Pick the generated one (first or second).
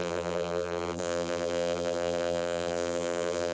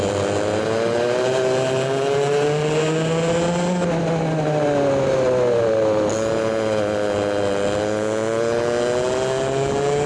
first